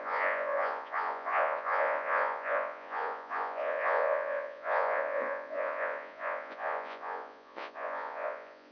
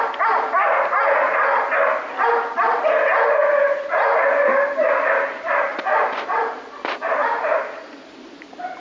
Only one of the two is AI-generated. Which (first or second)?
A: first